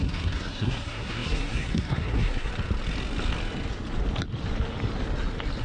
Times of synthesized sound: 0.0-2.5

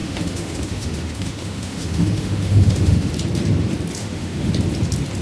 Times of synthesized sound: 0.0-3.1; 4.0-4.5